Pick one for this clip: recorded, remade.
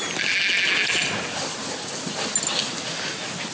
recorded